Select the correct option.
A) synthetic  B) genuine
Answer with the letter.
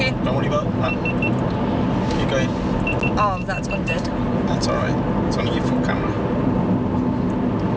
B